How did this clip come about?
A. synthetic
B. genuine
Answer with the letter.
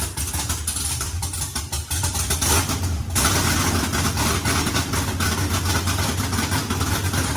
B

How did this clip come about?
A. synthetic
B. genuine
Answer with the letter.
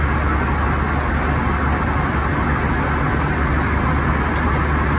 B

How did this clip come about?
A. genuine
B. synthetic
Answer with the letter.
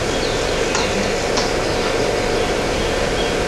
A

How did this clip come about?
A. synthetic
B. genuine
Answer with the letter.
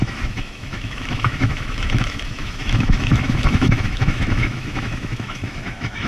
A